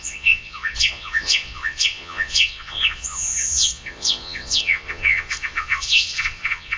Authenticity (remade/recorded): remade